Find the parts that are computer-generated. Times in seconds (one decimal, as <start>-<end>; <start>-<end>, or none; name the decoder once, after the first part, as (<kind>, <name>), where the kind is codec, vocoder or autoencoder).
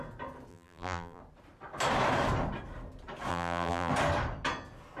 0.5-1.2 (vocoder, BigVGAN v2); 3.3-3.9